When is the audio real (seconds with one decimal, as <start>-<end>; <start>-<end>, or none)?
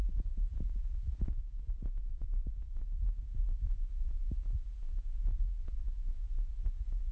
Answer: none